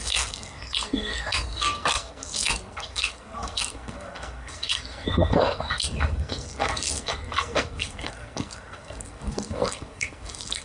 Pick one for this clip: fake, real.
fake